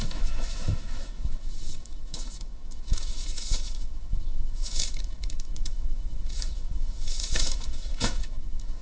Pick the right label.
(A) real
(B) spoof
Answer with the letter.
B